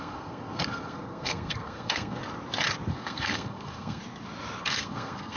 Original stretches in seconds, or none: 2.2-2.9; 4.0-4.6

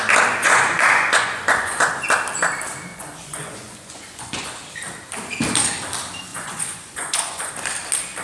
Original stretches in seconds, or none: 0.0-0.4; 2.0-2.9; 4.5-6.3; 7.5-8.2

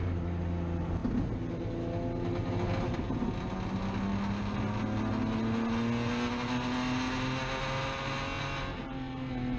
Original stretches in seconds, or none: 0.0-9.6

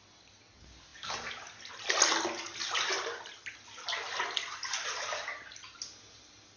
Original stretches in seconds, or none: 0.0-6.6